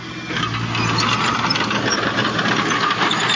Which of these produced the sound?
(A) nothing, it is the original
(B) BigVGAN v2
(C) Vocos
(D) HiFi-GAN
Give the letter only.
A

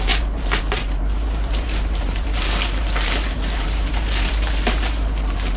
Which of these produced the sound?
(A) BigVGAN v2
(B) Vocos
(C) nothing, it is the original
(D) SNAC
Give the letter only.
A